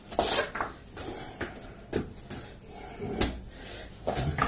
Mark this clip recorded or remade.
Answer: recorded